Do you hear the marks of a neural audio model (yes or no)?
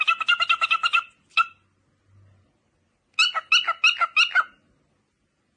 no